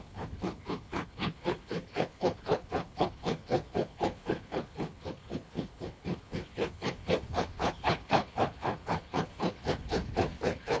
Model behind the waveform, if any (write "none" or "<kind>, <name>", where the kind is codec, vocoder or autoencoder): codec, HILCodec